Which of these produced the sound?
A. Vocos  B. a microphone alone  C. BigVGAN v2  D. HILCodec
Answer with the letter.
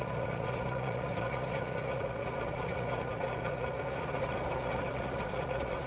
A